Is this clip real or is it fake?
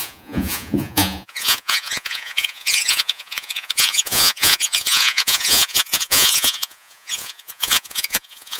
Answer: fake